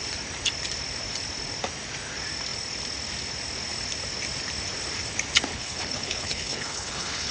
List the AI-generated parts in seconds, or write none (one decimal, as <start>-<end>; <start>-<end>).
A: 5.5-7.3